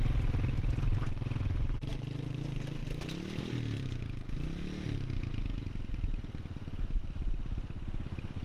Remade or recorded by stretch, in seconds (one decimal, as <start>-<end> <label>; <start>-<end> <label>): 0.0-0.6 recorded; 0.6-2.4 remade; 2.4-8.4 recorded